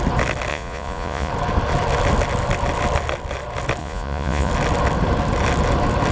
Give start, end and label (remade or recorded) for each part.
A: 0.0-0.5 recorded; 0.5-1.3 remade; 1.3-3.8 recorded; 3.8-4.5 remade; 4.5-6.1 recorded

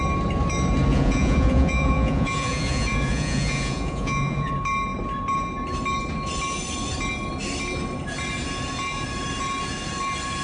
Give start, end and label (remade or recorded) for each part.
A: 0.0-0.9 recorded; 0.9-4.5 remade; 4.5-10.4 recorded

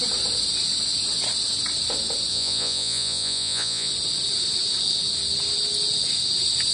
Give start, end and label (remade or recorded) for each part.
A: 0.0-2.3 recorded; 2.3-3.9 remade; 3.9-6.7 recorded

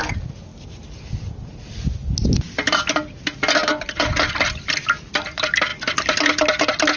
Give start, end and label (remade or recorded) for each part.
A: 0.0-7.0 recorded

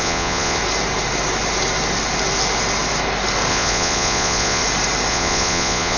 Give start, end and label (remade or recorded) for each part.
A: 0.0-0.6 remade; 0.6-3.5 recorded; 3.5-4.6 remade; 4.6-5.1 recorded; 5.1-6.0 remade

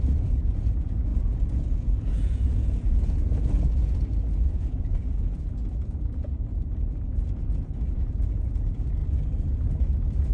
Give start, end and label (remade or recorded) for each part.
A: 0.0-9.0 remade; 9.0-10.3 recorded

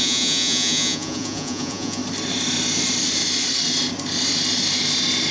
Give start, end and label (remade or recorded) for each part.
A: 0.0-2.0 remade; 2.0-5.3 recorded

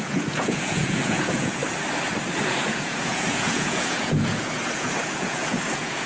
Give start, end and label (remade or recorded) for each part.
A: 0.0-1.6 remade; 1.6-2.4 recorded; 2.4-6.1 remade